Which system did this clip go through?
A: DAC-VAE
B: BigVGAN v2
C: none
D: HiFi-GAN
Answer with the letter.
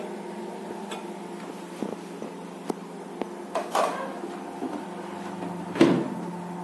C